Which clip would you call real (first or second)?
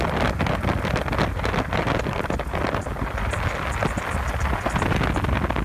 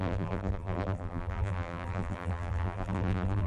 first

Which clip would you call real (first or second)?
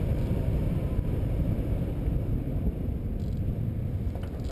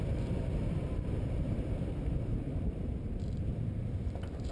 first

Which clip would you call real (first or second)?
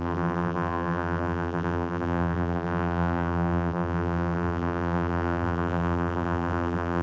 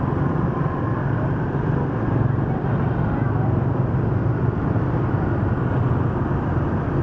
second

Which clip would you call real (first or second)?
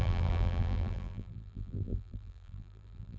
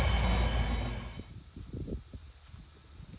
second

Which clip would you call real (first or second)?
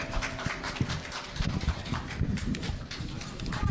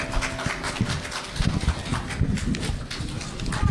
second